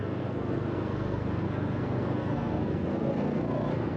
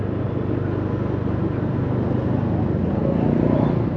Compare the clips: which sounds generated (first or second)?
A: first